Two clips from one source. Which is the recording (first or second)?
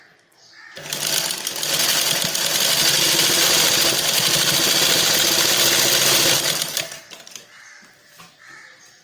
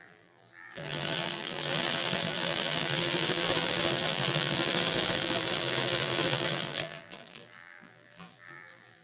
first